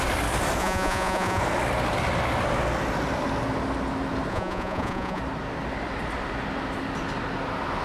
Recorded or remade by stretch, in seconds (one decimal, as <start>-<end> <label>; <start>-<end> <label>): 0.0-0.6 recorded; 0.6-1.4 remade; 1.4-4.3 recorded; 4.3-5.2 remade; 5.2-7.8 recorded